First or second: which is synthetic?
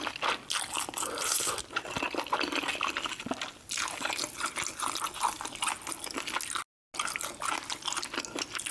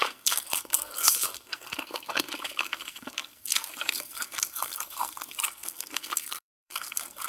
second